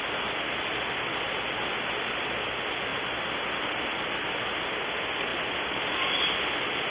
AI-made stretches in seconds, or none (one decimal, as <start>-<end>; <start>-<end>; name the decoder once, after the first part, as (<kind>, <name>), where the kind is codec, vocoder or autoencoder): none